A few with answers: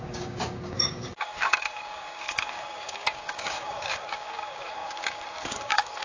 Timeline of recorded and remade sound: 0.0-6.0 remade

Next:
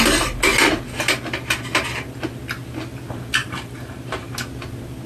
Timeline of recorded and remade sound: 0.0-3.4 recorded; 3.4-4.3 remade; 4.3-5.1 recorded

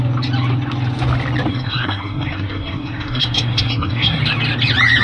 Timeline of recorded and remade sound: 0.0-1.5 recorded; 1.5-4.2 remade; 4.2-5.0 recorded

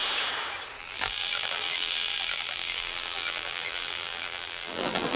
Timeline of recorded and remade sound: 0.0-0.8 recorded; 0.8-5.2 remade